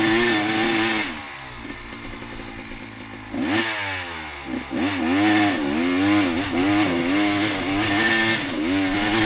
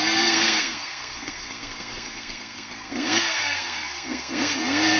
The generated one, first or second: second